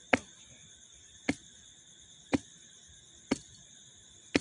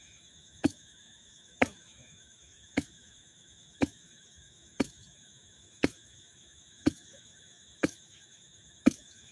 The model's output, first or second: second